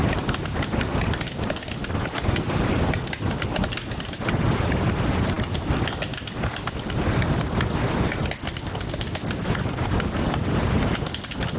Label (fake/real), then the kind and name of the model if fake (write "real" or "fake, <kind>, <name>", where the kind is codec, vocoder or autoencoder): real